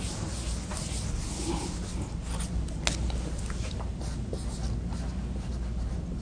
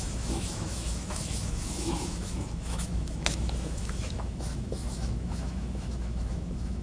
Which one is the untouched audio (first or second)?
first